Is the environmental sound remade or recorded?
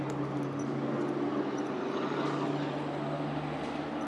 recorded